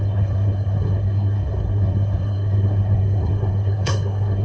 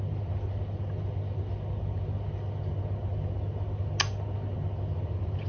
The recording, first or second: second